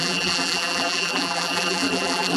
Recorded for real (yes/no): no